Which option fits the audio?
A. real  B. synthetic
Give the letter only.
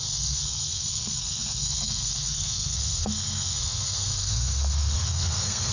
B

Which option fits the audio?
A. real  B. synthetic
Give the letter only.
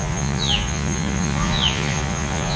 B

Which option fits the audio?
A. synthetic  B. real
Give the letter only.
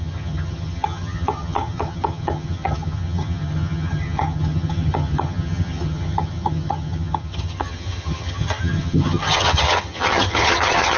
A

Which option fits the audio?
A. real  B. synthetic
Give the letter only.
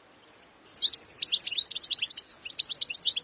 A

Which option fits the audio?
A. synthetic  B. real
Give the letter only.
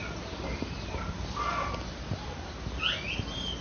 B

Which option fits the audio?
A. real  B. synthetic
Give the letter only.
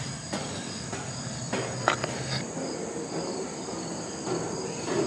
A